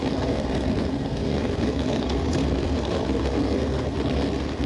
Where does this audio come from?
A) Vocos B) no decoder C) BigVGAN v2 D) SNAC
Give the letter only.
D